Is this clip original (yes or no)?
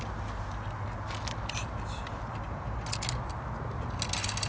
yes